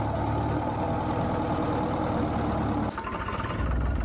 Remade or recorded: recorded